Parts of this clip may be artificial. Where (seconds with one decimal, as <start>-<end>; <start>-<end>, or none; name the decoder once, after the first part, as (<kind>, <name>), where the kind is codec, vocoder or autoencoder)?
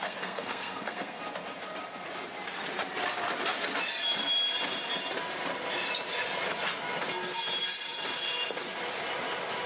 0.0-1.2 (codec, SNAC)